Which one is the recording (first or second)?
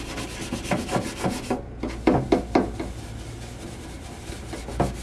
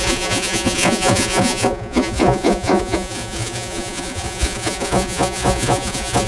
first